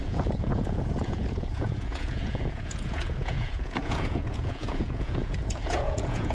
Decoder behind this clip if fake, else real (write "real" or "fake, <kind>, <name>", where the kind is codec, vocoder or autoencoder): fake, vocoder, Vocos